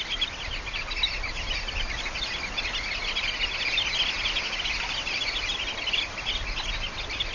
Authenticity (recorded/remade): recorded